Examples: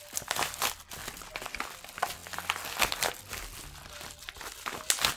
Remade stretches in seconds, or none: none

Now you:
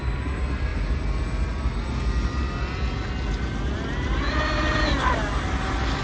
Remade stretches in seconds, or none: none

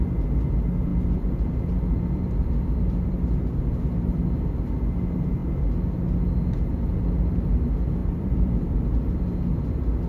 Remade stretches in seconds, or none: 0.9-3.6; 8.0-9.1

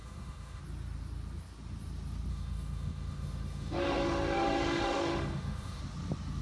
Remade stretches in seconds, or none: 0.0-0.6; 2.3-5.8

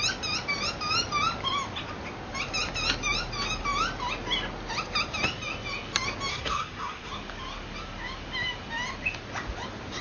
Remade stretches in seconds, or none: 6.3-7.1

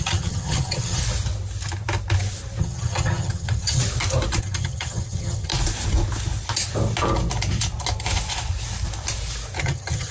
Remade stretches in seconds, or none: 0.0-1.0; 2.6-3.8; 4.4-5.5; 9.6-10.1